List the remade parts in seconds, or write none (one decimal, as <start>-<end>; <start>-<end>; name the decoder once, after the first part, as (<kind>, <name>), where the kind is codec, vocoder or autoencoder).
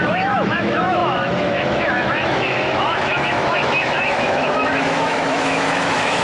0.0-6.2 (autoencoder, DAC-VAE)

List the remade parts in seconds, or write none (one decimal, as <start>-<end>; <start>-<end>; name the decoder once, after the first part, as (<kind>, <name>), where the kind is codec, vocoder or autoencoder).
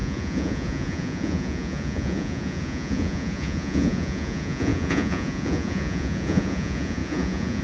0.0-7.6 (vocoder, Vocos)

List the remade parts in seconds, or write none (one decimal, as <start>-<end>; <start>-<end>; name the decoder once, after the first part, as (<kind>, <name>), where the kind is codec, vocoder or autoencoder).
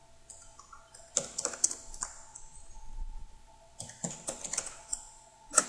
4.8-5.7 (vocoder, Vocos)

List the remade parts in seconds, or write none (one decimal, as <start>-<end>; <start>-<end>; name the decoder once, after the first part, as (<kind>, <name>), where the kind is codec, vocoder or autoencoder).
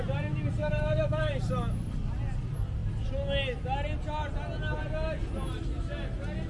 0.6-1.3 (autoencoder, DAC-VAE)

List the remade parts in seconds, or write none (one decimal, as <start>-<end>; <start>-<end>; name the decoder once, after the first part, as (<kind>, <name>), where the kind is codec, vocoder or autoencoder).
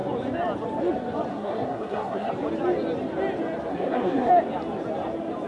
1.3-2.3 (codec, SNAC); 3.7-4.3